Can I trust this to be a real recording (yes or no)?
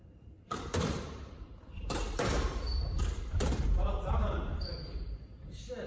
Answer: no